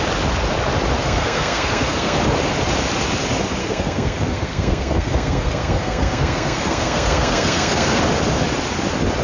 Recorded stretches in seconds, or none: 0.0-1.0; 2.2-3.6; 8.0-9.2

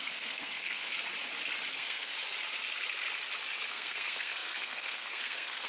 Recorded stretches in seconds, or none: 0.9-1.7; 2.1-3.7

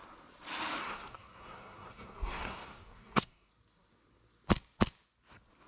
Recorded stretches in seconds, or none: 0.0-0.8; 3.5-5.7

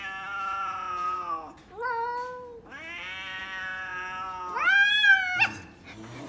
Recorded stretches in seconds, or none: 0.0-6.3

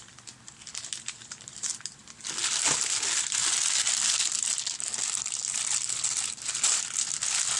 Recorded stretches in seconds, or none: 0.0-7.6